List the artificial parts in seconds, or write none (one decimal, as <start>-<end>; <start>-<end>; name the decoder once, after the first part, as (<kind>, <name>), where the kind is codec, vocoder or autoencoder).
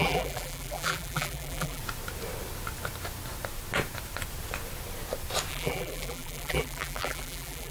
0.0-1.8 (vocoder, BigVGAN v2); 5.5-7.7